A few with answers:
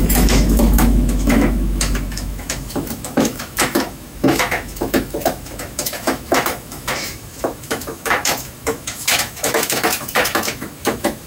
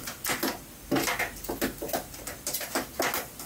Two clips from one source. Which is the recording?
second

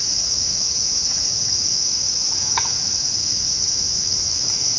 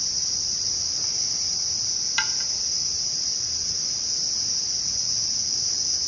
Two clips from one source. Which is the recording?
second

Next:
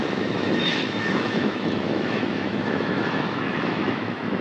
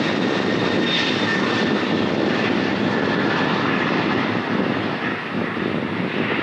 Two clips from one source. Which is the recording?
second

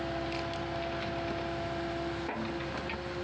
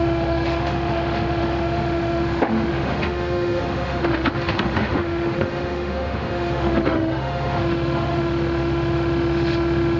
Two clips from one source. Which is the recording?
first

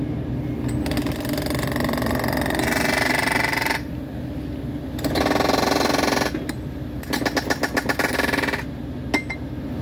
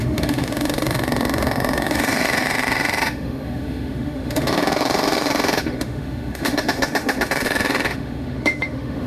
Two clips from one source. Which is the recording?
first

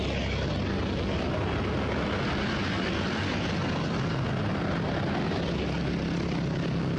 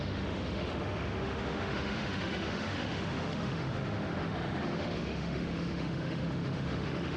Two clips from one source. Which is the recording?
first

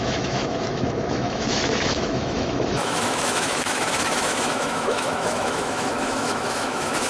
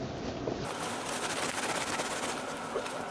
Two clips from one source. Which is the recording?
second